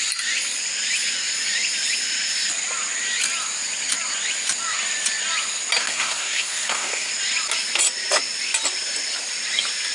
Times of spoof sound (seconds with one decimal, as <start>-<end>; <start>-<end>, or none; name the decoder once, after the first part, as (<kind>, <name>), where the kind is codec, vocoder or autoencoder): 5.8-7.1 (codec, SNAC)